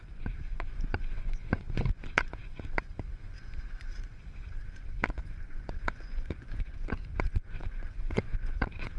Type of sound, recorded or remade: remade